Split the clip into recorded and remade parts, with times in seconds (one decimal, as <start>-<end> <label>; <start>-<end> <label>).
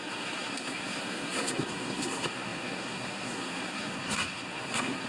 0.0-5.1 remade